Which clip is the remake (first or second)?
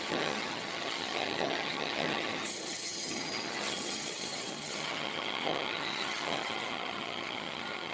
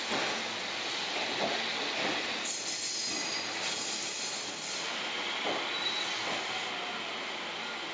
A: first